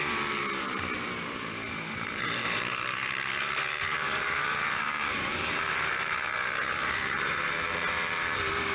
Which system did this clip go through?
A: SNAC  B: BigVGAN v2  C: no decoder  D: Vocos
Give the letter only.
B